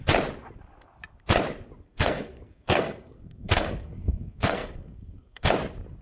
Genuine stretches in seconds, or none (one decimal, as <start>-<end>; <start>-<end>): 0.0-1.9; 5.5-6.0

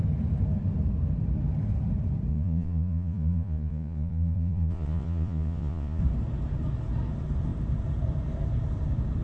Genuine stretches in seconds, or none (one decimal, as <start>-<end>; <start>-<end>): 0.0-2.3; 6.0-9.2